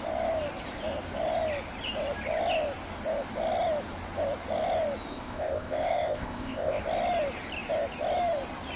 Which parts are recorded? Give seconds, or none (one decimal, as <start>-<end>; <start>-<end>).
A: 0.0-5.1; 6.8-8.8